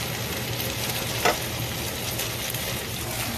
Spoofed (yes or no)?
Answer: no